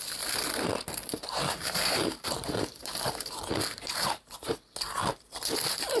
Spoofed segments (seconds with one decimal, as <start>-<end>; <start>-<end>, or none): 1.0-4.6